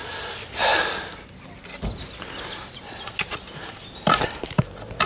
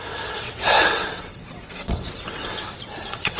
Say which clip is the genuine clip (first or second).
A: first